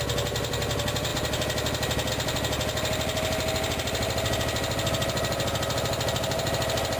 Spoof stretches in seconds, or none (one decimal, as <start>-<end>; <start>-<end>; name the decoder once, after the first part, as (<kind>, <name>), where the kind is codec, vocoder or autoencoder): none